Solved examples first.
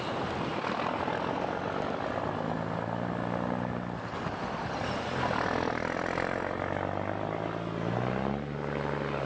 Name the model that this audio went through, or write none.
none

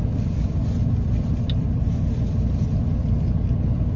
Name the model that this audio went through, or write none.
none